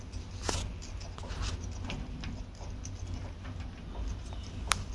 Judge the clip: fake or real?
real